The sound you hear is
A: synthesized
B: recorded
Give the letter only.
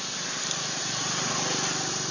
B